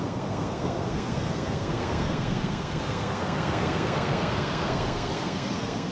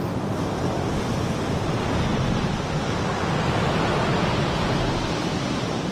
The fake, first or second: first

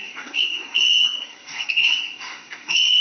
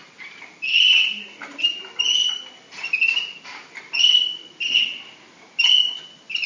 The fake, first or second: first